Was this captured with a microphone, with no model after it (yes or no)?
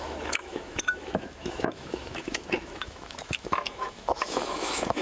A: no